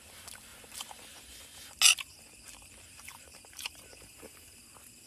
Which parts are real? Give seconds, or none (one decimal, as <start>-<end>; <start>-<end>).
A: 0.0-0.5; 1.3-2.1; 4.6-5.1